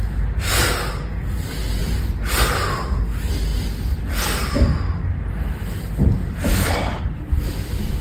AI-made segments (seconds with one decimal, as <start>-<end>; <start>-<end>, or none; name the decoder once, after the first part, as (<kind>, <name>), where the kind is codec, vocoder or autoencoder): 1.8-2.4 (vocoder, BigVGAN v2); 6.2-7.0